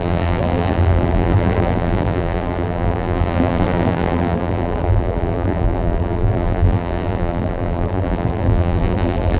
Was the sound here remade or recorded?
remade